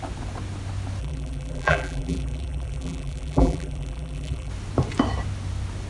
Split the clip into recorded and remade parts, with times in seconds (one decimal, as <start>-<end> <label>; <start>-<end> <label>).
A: 0.0-1.0 recorded; 1.0-4.5 remade; 4.5-5.9 recorded